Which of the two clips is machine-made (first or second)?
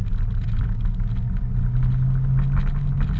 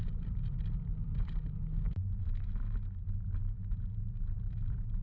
second